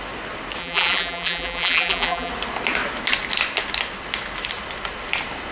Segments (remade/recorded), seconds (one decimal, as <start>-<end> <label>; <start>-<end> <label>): 0.0-0.6 recorded; 0.6-2.3 remade; 2.3-5.5 recorded